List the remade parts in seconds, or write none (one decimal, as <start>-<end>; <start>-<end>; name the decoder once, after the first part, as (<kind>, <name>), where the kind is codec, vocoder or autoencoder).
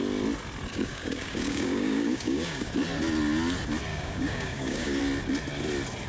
0.7-2.7 (codec, DAC); 3.9-5.0